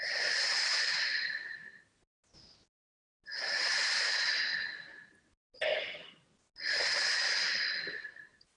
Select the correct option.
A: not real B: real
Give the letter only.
B